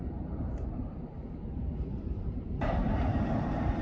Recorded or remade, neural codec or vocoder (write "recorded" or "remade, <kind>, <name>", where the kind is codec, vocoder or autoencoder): remade, vocoder, BigVGAN v2